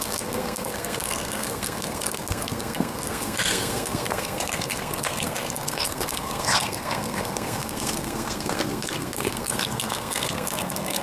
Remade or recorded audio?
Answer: remade